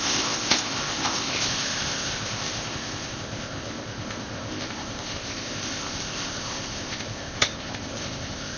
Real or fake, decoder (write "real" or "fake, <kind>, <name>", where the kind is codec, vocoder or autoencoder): fake, codec, ZipCodec